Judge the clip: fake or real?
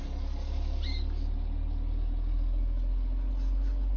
real